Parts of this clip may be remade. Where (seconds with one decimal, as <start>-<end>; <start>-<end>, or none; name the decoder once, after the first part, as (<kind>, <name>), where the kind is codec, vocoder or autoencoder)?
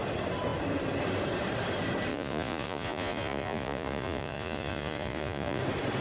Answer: 2.1-5.6 (vocoder, Vocos)